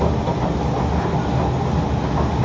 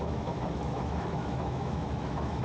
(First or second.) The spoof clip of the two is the second